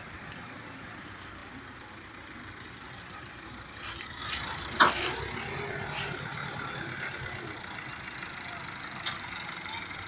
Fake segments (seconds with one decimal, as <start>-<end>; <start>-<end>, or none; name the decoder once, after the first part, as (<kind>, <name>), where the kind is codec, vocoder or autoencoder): none